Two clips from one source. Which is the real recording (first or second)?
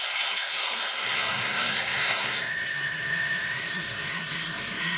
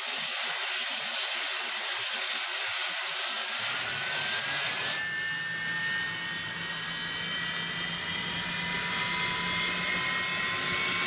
second